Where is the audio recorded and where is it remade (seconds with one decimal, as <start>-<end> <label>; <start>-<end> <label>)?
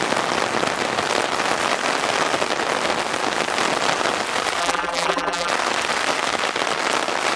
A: 0.0-4.6 recorded; 4.6-5.5 remade; 5.5-7.4 recorded